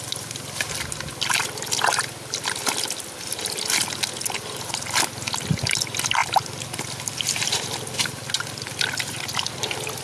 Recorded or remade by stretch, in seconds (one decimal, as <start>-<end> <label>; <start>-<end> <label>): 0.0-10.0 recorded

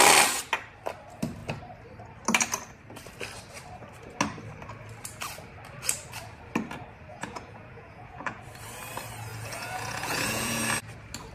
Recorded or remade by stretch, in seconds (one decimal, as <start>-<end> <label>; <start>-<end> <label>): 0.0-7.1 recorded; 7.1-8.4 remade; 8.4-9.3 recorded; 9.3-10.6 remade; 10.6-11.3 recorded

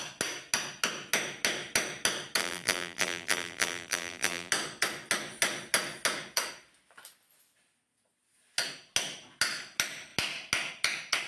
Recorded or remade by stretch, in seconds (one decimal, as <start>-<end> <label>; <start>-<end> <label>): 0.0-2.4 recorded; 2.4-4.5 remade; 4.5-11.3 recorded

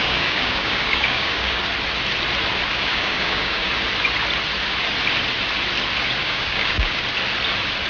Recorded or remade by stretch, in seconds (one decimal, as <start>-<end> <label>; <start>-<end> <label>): 0.0-1.6 remade; 1.6-2.7 recorded; 2.7-3.7 remade; 3.7-6.2 recorded; 6.2-7.0 remade; 7.0-7.9 recorded

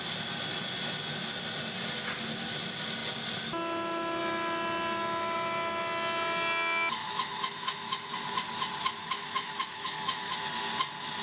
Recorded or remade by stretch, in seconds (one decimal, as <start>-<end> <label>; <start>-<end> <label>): 0.0-7.0 recorded; 7.0-8.1 remade; 8.1-9.0 recorded; 9.0-10.3 remade; 10.3-11.2 recorded

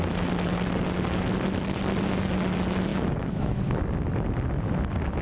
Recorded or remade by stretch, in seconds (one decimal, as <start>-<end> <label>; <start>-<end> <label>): 0.0-2.9 recorded; 2.9-3.6 remade; 3.6-5.2 recorded

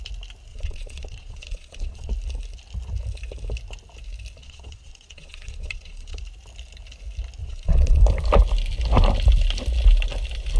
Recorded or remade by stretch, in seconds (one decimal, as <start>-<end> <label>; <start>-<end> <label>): 0.0-0.5 recorded; 0.5-2.1 remade; 2.1-4.4 recorded; 4.4-6.2 remade; 6.2-7.4 recorded; 7.4-8.0 remade; 8.0-10.6 recorded

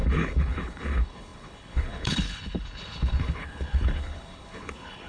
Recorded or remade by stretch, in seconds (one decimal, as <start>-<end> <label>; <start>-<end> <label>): 0.0-5.1 remade